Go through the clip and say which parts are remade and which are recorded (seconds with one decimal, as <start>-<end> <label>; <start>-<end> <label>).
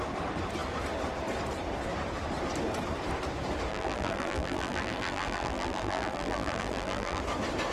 0.0-3.7 recorded; 3.7-7.2 remade; 7.2-7.7 recorded